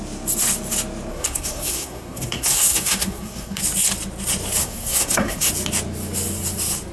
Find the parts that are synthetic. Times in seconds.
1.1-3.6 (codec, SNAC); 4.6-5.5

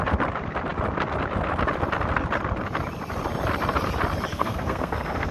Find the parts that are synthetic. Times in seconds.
4.3-5.3 (codec, SNAC)

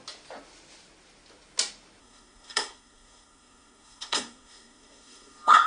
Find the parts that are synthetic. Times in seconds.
2.0-5.7 (codec, SNAC)

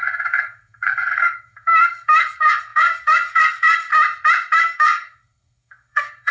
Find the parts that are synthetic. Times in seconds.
0.0-3.9 (codec, SNAC); 4.6-6.3

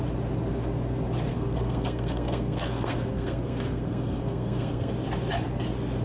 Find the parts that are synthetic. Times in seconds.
1.3-4.9 (codec, SNAC)

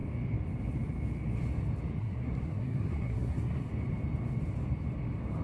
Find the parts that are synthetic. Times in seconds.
2.0-3.7 (codec, SNAC)

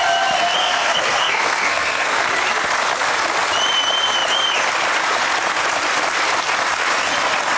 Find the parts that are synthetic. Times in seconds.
0.6-2.3 (codec, SNAC)

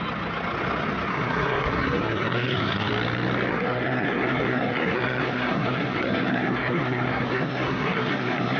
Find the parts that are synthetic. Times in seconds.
1.1-2.9 (codec, SNAC); 3.5-8.6